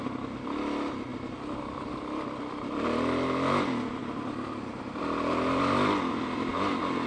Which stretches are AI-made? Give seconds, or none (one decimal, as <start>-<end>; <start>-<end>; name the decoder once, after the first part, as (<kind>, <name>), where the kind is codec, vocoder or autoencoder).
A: 4.0-5.0 (vocoder, BigVGAN v2)